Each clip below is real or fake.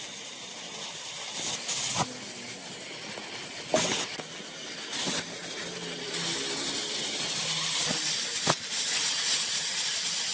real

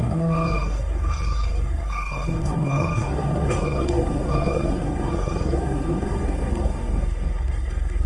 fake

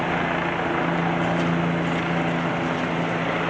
real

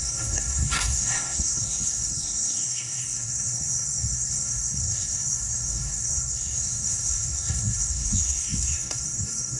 fake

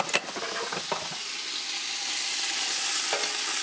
real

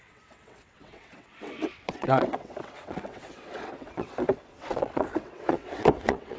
fake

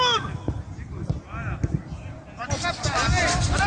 real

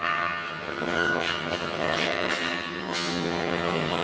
fake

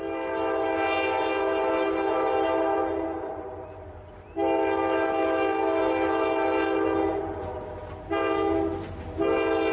real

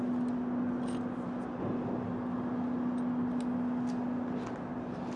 real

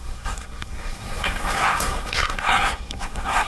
fake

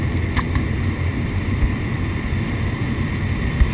real